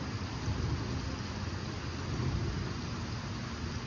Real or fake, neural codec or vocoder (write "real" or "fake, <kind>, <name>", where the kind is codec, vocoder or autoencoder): real